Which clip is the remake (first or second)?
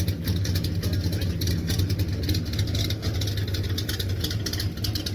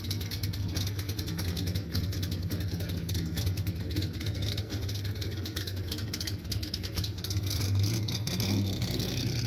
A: second